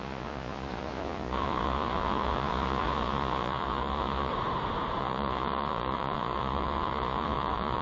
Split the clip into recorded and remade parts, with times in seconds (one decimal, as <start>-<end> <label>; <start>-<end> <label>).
0.0-4.3 remade; 4.3-5.0 recorded; 5.0-7.8 remade